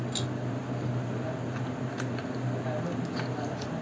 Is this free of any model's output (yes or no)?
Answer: yes